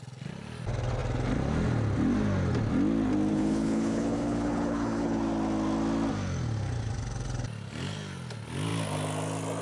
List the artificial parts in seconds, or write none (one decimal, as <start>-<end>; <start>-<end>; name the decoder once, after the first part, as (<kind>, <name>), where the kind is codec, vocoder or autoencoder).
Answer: 3.3-5.2 (codec, HILCodec)